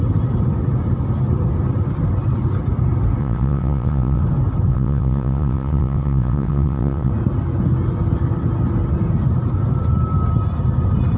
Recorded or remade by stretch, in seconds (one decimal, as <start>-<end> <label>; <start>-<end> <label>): 0.0-3.2 recorded; 3.2-4.2 remade; 4.2-4.7 recorded; 4.7-7.1 remade; 7.1-11.2 recorded